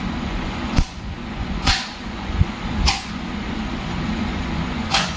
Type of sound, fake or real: fake